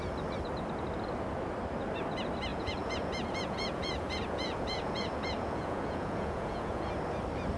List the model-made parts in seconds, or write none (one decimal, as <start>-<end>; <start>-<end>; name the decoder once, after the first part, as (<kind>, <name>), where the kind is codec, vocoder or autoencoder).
2.5-6.9 (vocoder, Vocos)